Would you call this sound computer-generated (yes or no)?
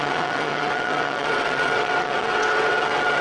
yes